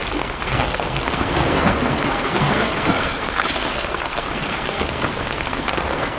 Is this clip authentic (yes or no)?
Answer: no